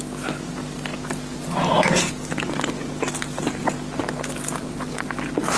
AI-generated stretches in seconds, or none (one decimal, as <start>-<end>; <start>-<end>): none